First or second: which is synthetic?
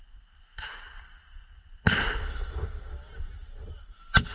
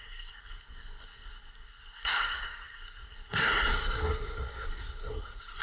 second